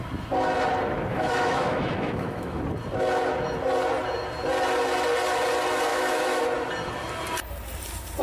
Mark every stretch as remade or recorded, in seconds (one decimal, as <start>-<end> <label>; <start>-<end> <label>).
0.0-1.1 recorded; 1.1-2.6 remade; 2.6-5.9 recorded; 5.9-6.4 remade; 6.4-8.2 recorded